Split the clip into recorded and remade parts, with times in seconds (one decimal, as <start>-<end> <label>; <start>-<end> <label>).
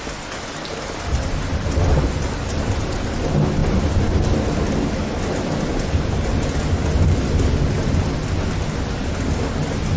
0.0-10.0 recorded